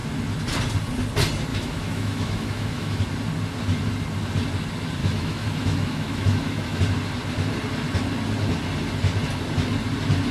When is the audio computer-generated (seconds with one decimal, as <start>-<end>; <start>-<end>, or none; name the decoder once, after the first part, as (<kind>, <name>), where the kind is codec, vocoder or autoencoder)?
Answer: 1.5-3.0 (autoencoder, DAC-VAE); 5.0-6.8